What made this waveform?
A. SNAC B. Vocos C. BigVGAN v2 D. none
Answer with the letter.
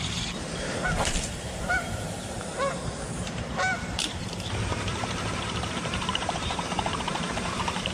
C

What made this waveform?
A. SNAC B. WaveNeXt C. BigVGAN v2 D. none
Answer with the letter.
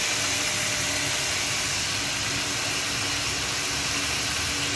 D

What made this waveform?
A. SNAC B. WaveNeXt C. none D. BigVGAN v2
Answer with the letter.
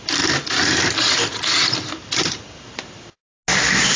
C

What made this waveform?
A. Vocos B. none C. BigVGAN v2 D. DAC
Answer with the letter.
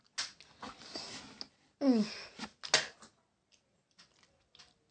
B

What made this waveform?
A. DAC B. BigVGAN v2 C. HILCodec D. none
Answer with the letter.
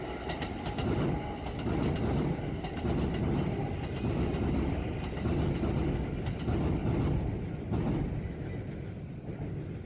D